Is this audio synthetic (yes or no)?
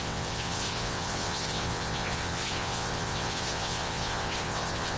yes